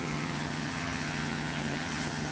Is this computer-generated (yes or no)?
yes